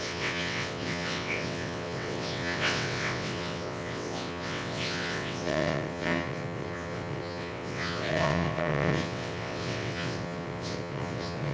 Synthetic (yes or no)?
yes